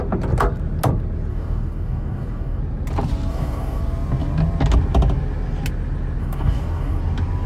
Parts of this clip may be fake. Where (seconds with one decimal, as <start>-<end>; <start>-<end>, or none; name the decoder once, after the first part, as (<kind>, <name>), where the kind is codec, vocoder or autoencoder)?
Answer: 1.3-2.6 (codec, DAC); 3.3-3.8; 6.2-7.0